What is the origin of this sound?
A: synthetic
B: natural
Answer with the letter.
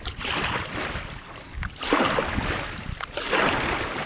B